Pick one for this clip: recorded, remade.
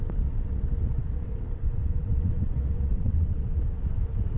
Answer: remade